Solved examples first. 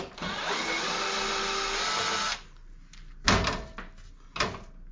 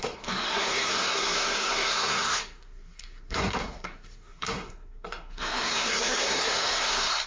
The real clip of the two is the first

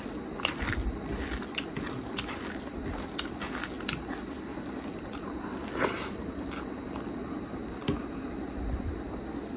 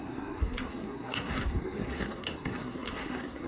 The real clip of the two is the first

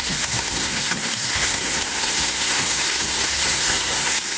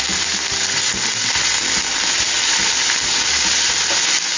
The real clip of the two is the second